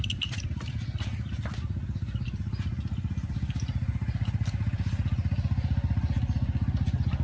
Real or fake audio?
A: real